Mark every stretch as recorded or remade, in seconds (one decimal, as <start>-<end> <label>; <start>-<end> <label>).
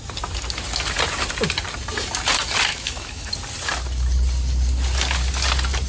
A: 0.0-2.7 recorded; 2.7-3.3 remade; 3.3-5.9 recorded